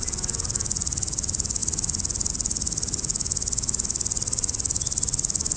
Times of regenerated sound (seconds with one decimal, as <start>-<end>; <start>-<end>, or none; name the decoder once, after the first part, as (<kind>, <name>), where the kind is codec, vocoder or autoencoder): none